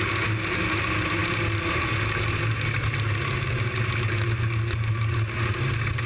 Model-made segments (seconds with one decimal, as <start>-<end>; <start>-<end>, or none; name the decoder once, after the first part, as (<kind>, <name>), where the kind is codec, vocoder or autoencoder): none